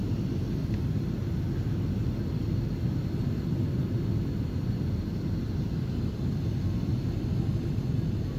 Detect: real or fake real